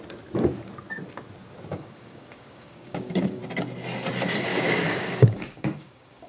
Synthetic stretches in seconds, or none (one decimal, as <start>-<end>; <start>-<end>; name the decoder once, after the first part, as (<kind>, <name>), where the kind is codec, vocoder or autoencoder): 1.7-3.4 (codec, DAC); 4.5-6.3